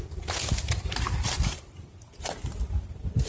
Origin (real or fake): real